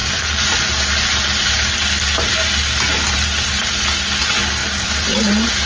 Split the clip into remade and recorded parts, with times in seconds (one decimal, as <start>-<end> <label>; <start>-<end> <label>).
0.0-0.6 remade; 0.6-4.6 recorded; 4.6-5.2 remade; 5.2-5.7 recorded